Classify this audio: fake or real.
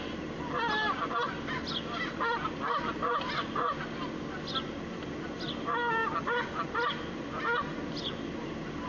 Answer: real